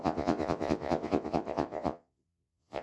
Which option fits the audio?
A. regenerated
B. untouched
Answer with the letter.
A